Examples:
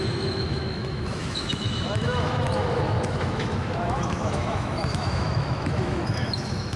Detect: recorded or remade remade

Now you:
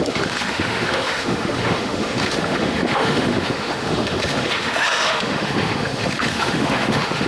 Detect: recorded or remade remade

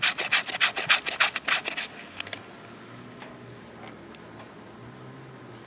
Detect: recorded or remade recorded